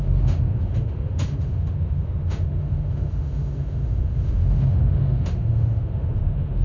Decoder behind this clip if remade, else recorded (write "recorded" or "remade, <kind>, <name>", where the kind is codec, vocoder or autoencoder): remade, autoencoder, DAC-VAE